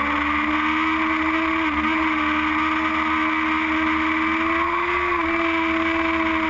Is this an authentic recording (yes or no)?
yes